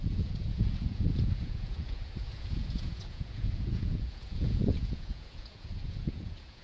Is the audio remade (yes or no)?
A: yes